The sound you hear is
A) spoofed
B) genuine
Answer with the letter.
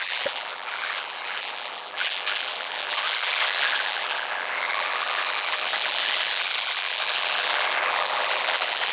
A